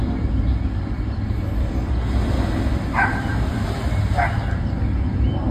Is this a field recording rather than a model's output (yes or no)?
yes